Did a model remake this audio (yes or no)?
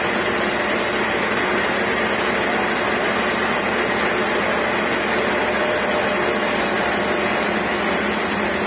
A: no